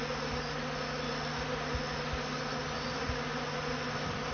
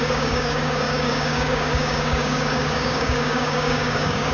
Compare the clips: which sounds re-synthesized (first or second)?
second